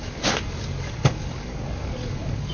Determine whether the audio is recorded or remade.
remade